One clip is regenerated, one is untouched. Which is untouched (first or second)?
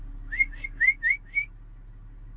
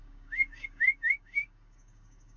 first